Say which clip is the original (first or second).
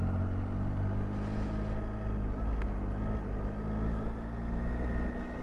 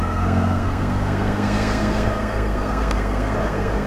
first